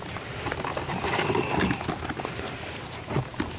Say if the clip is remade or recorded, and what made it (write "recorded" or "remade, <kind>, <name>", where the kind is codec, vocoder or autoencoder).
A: recorded